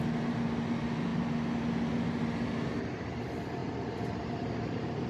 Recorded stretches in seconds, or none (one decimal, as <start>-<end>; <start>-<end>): 0.0-3.6

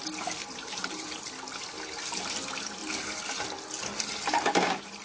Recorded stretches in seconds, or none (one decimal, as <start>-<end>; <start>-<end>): 0.0-0.4; 1.3-3.9

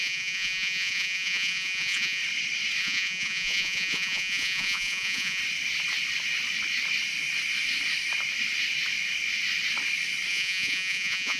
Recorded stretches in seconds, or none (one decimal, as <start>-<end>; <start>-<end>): 2.2-2.8; 5.4-10.3

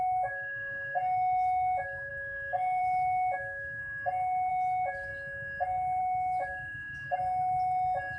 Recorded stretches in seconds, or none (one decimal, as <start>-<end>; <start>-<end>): 2.1-2.8; 3.8-4.5; 5.1-6.0; 7.2-8.2

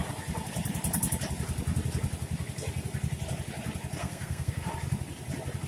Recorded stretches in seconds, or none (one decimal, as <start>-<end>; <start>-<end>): 0.0-4.0; 4.7-5.7

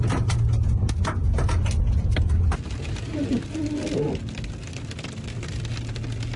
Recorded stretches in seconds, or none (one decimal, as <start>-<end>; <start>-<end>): 0.0-6.4